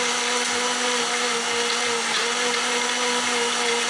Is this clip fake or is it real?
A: real